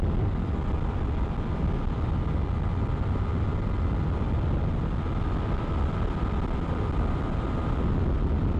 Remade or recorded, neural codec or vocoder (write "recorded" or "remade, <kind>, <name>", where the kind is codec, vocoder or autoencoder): recorded